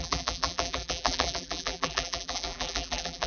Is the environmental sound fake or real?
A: fake